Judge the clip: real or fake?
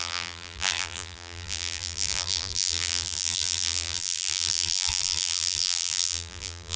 fake